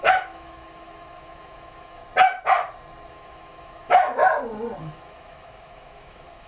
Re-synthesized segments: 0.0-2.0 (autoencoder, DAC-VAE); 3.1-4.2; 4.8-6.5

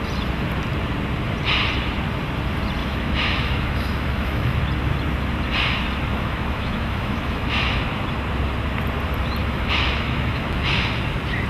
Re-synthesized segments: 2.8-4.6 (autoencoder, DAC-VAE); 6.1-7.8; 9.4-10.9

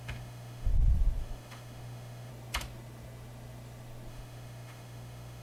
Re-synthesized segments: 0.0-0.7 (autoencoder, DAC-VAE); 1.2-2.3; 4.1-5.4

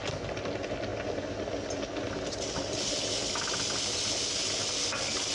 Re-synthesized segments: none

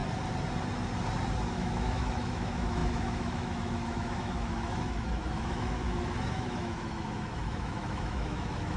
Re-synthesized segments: 1.5-8.8 (autoencoder, DAC-VAE)

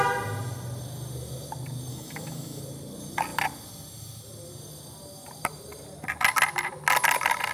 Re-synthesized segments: 1.9-2.6 (autoencoder, DAC-VAE)